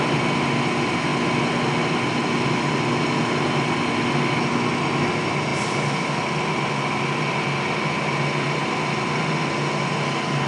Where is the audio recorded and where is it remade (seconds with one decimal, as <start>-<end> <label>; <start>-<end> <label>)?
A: 0.0-10.5 recorded